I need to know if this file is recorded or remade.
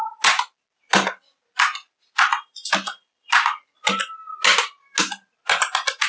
recorded